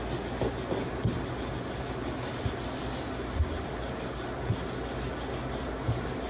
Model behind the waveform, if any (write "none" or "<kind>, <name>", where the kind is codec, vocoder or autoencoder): none